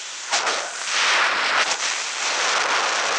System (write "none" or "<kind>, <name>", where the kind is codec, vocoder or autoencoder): none